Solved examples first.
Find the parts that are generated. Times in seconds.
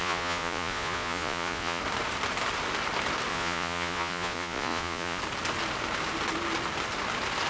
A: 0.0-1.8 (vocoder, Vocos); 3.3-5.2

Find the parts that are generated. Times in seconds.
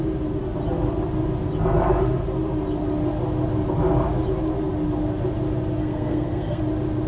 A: 5.8-6.6 (codec, SNAC)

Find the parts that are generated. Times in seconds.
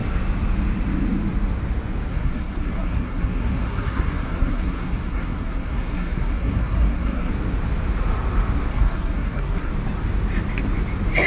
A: 2.1-7.3 (codec, SNAC); 8.7-9.7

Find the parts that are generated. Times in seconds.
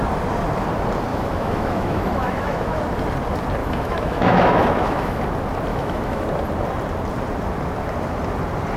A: 1.1-2.8 (autoencoder, DAC-VAE); 3.6-5.2; 5.7-6.2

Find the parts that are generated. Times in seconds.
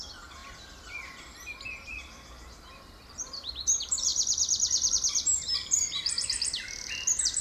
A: 0.0-7.4 (vocoder, BigVGAN v2)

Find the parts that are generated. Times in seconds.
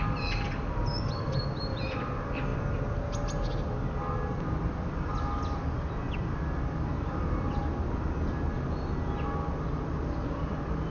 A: 0.0-2.5 (vocoder, BigVGAN v2); 4.6-7.6; 10.2-10.9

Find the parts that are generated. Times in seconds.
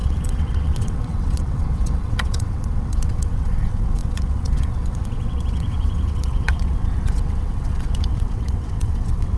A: 0.0-9.4 (vocoder, WaveNeXt)